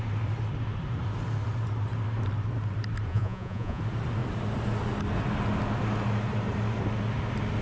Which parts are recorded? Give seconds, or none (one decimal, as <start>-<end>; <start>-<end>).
0.0-3.1; 3.8-7.6